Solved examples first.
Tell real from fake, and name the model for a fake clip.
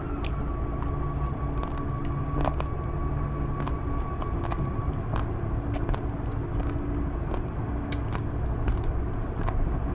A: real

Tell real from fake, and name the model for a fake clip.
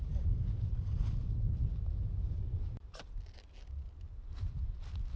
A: real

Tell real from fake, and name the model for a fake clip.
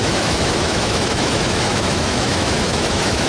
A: fake, autoencoder, DAC-VAE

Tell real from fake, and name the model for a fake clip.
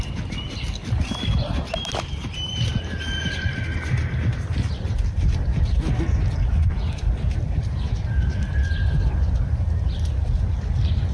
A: real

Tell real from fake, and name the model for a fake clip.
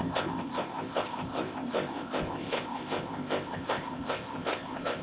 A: fake, codec, ZipCodec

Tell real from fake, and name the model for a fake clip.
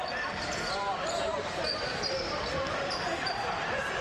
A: fake, vocoder, BigVGAN v2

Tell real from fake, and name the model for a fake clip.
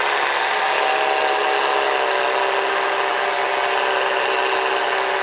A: real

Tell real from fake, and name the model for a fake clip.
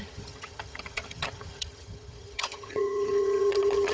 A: fake, vocoder, HiFi-GAN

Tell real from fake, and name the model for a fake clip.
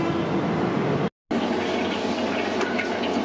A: real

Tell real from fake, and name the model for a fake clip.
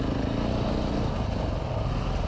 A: real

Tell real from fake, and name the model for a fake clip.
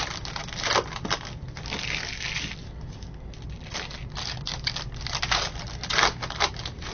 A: real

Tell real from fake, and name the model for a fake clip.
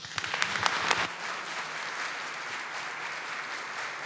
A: real